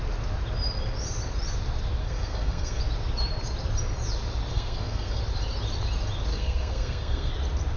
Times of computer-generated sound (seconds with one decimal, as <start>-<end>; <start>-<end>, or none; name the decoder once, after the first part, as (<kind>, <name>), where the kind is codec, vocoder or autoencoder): 2.0-2.8 (codec, SNAC); 4.5-5.2; 6.3-7.3

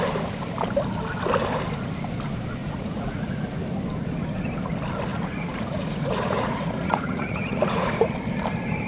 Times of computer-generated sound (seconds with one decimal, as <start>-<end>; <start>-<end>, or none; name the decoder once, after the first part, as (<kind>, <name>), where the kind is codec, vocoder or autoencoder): 2.6-3.5 (vocoder, Vocos); 5.1-8.1